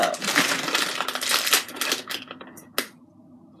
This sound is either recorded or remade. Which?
recorded